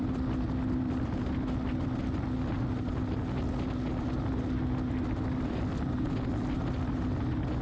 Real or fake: real